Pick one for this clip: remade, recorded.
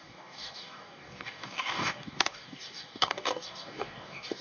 remade